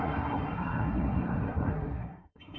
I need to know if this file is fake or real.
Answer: fake